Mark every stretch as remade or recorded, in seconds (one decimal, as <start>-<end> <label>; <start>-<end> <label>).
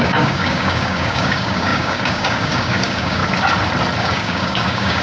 0.0-3.2 remade; 3.2-4.0 recorded; 4.0-5.0 remade